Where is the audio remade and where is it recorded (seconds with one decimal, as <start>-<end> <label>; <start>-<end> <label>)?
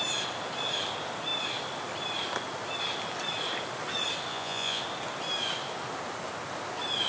0.0-4.3 recorded; 4.3-4.8 remade; 4.8-7.1 recorded